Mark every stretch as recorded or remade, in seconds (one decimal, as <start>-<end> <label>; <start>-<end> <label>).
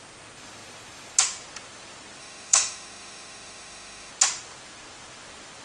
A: 0.0-2.2 recorded; 2.2-4.1 remade; 4.1-5.6 recorded